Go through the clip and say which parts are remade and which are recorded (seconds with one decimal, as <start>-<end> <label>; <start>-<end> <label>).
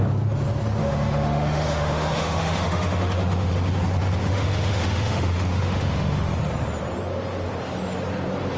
0.0-0.8 recorded; 0.8-3.5 remade; 3.5-4.2 recorded; 4.2-6.3 remade; 6.3-8.6 recorded